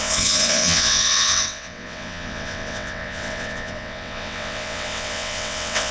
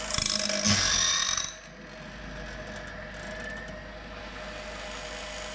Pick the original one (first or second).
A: second